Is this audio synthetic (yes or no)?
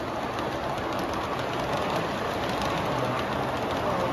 no